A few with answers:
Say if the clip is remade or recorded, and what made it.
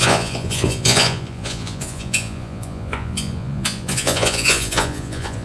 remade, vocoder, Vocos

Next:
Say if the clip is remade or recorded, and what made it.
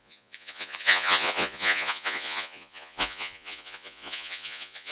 remade, vocoder, Vocos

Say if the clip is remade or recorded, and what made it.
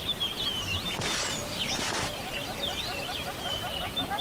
recorded